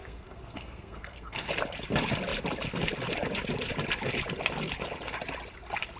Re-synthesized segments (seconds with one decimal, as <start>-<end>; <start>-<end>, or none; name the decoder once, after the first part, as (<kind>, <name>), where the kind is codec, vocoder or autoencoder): 0.0-1.5 (codec, SNAC)